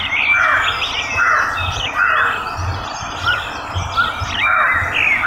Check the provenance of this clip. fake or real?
real